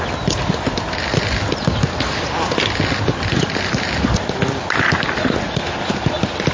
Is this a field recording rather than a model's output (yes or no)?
yes